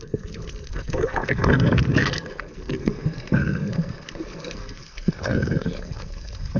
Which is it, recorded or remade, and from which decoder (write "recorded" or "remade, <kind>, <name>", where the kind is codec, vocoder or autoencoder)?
remade, codec, SNAC